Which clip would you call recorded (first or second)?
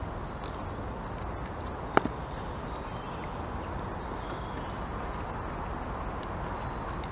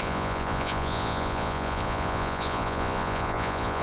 first